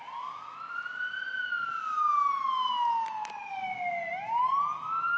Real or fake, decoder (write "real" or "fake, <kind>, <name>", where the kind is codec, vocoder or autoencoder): real